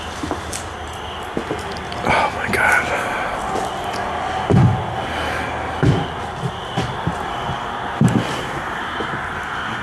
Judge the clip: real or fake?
real